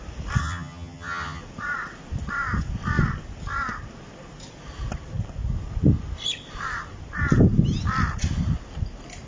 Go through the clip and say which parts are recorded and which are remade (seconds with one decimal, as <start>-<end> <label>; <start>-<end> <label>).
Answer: 0.0-0.4 recorded; 0.4-1.4 remade; 1.4-9.3 recorded